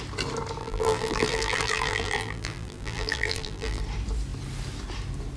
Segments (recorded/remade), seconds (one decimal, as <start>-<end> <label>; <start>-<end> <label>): 0.0-0.6 recorded; 0.6-3.8 remade; 3.8-5.4 recorded

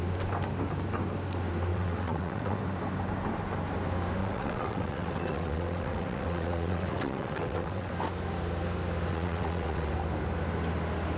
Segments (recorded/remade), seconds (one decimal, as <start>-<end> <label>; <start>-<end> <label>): 0.0-1.7 recorded; 1.7-2.6 remade; 2.6-4.2 recorded; 4.2-7.9 remade; 7.9-9.1 recorded; 9.1-9.9 remade; 9.9-11.2 recorded

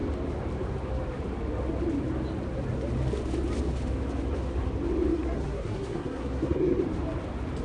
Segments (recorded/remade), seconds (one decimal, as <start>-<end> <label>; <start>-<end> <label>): 0.0-5.1 recorded; 5.1-6.8 remade; 6.8-7.6 recorded

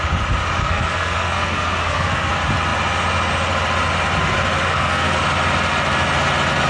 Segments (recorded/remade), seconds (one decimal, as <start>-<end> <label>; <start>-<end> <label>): 0.0-0.6 recorded; 0.6-2.3 remade; 2.3-4.7 recorded; 4.7-5.2 remade; 5.2-6.7 recorded

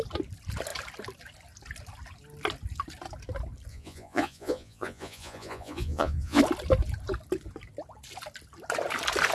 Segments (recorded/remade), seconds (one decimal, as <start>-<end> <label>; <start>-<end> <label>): 0.0-3.7 recorded; 3.7-6.4 remade; 6.4-9.3 recorded

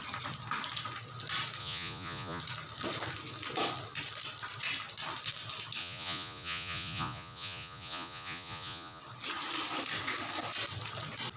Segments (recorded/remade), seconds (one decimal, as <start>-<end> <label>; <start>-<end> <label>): 0.0-1.6 recorded; 1.6-2.4 remade; 2.4-5.8 recorded; 5.8-9.0 remade; 9.0-11.4 recorded

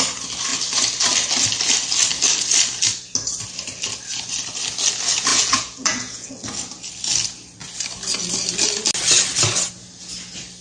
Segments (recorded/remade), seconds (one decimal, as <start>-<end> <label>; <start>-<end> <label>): 0.0-5.3 recorded; 5.3-6.3 remade; 6.3-10.6 recorded

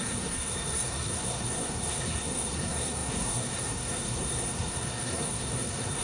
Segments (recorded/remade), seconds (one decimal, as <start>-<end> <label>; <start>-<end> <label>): 0.0-6.0 remade